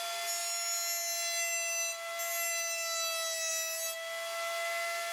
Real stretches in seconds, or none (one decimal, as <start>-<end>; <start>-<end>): 0.0-5.1